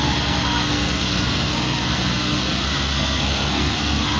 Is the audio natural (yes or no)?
no